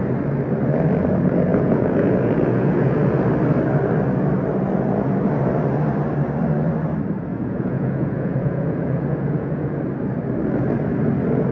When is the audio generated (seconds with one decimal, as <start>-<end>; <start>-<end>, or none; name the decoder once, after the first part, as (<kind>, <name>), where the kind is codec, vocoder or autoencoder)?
1.5-3.2 (vocoder, Vocos); 7.3-9.8